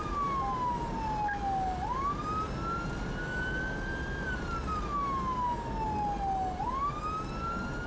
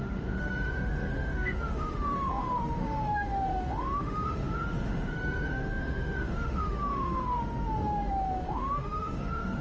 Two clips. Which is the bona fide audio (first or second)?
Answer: first